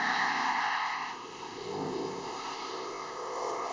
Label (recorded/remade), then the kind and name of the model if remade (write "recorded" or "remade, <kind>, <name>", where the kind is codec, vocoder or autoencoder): remade, codec, ZipCodec